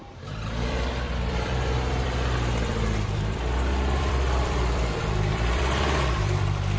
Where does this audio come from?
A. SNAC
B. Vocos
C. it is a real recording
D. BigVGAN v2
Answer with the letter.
D